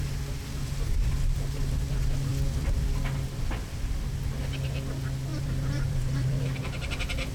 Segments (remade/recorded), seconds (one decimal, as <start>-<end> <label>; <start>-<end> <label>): 0.0-5.3 recorded; 5.3-6.4 remade; 6.4-7.3 recorded